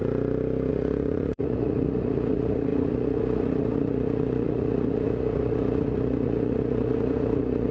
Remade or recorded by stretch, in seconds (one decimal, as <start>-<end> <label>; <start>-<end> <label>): 0.0-0.7 recorded; 0.7-7.7 remade